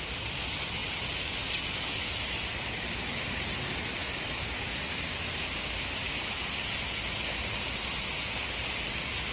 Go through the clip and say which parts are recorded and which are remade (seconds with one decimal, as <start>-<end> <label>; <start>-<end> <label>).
0.0-4.0 recorded; 4.0-4.6 remade; 4.6-9.3 recorded